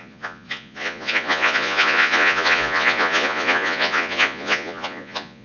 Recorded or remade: remade